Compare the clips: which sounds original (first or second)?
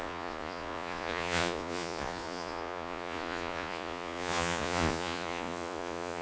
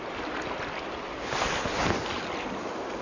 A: second